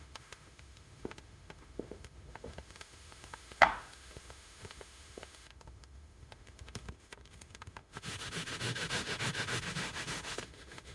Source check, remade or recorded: remade